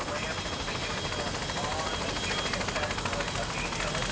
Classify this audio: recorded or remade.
recorded